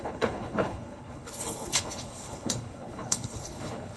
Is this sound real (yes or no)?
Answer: no